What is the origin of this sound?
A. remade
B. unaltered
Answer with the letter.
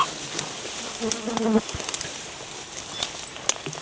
B